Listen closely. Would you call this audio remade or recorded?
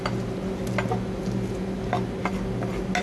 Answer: recorded